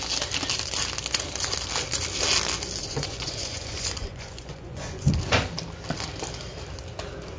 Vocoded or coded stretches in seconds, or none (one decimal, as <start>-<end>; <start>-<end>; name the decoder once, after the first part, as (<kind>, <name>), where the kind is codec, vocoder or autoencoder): 2.8-5.1 (vocoder, Vocos)